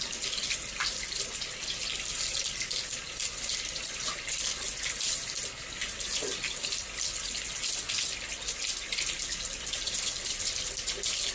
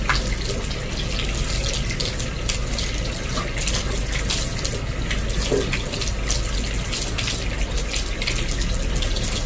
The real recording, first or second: second